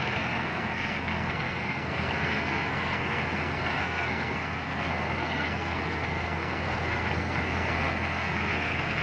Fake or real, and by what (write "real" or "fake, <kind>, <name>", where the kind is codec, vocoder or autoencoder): fake, codec, SNAC